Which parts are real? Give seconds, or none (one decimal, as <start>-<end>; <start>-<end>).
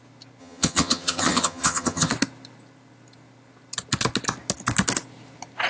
0.0-0.4; 2.1-5.7